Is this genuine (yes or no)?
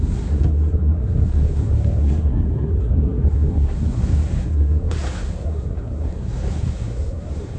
no